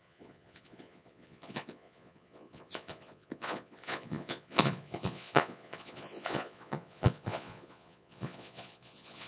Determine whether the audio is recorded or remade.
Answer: remade